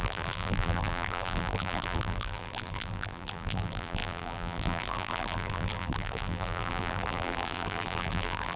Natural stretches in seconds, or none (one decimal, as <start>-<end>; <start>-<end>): none